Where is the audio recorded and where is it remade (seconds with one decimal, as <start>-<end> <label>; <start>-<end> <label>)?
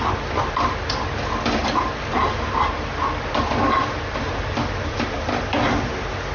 0.0-1.6 recorded; 1.6-5.4 remade; 5.4-6.3 recorded